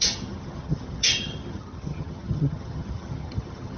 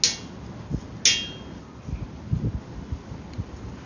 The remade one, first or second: first